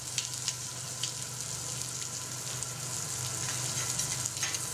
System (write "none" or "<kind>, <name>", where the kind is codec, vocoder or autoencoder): none